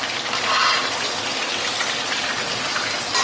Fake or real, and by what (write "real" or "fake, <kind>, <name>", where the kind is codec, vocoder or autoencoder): real